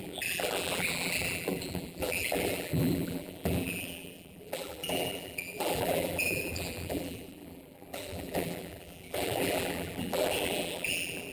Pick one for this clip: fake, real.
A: fake